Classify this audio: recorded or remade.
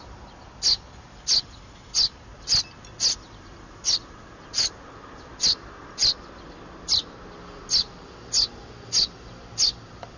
recorded